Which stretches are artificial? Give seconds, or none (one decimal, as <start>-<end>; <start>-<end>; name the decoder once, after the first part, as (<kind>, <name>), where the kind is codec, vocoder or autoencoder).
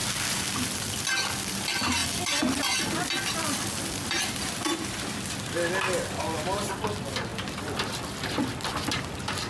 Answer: 0.0-0.8 (vocoder, BigVGAN v2); 2.0-5.3